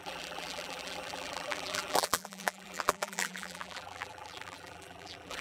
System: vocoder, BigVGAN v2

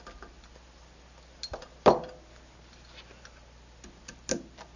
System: none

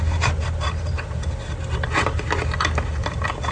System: none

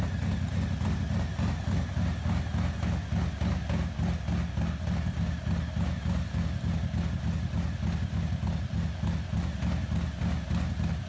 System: none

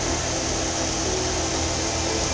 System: none